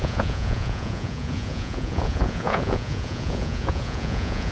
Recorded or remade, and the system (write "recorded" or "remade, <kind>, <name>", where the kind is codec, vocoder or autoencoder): remade, vocoder, Vocos